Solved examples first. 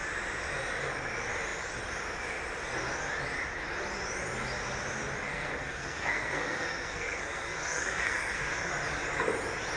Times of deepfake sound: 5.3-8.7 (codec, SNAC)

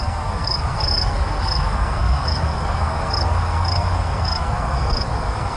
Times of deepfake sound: 0.0-5.6 (codec, SNAC)

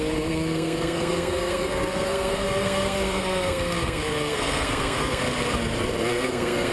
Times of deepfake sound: 0.0-5.2 (codec, SNAC); 6.1-6.7

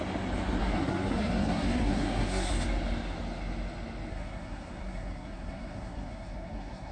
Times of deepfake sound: 0.6-2.5 (codec, SNAC); 4.1-6.9

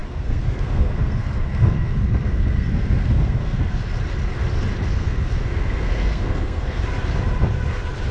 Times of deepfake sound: 0.0-3.8 (codec, SNAC); 4.9-6.8

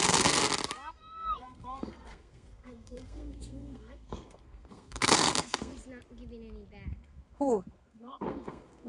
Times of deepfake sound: 0.0-0.4 (codec, SNAC); 0.9-5.7; 6.9-8.9

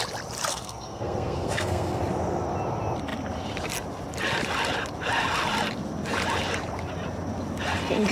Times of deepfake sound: 0.5-2.0 (codec, SNAC)

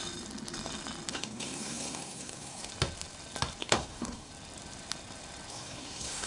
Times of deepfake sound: 1.1-2.7 (codec, SNAC); 3.6-4.3; 5.5-6.3